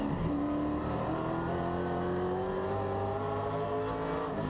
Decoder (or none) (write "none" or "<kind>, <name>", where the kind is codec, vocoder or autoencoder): none